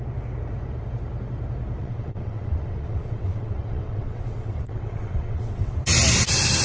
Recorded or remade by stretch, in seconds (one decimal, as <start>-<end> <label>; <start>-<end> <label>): 0.0-1.8 recorded; 1.8-5.8 remade; 5.8-6.6 recorded

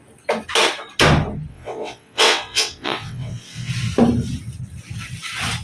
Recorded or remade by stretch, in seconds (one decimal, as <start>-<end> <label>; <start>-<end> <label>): 0.0-1.5 recorded; 1.5-3.7 remade; 3.7-5.6 recorded

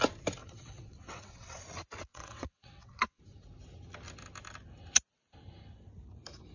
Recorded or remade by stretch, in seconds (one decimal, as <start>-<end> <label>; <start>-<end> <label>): 0.0-0.4 recorded; 0.4-1.6 remade; 1.6-2.1 recorded; 2.1-3.2 remade; 3.2-6.5 recorded